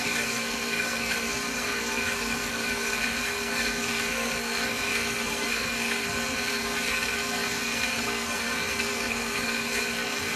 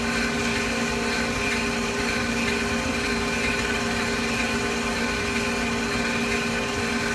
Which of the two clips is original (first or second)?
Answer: second